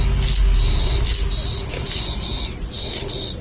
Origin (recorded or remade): recorded